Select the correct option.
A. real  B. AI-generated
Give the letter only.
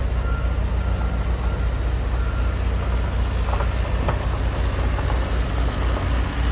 A